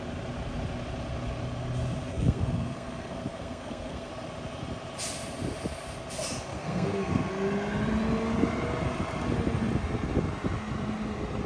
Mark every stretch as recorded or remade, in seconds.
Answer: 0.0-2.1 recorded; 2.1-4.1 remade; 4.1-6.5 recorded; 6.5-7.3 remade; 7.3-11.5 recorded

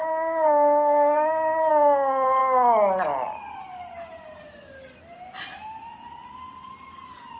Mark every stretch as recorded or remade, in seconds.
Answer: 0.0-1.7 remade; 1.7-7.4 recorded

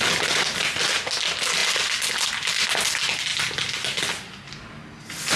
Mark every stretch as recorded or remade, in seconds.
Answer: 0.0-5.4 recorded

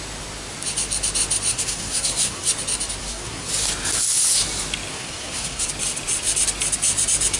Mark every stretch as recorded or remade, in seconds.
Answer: 0.0-1.5 recorded; 1.5-2.5 remade; 2.5-3.0 recorded; 3.0-3.5 remade; 3.5-4.9 recorded; 4.9-5.7 remade; 5.7-7.4 recorded